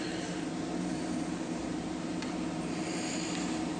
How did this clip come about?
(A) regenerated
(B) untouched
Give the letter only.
B